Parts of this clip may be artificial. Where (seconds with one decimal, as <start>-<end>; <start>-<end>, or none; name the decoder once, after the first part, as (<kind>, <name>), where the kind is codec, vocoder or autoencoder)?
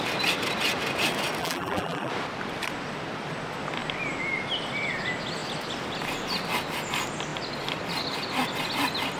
1.4-2.1 (vocoder, BigVGAN v2)